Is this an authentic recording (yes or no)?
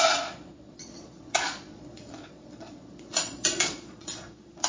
no